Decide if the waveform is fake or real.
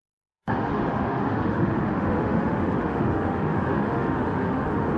fake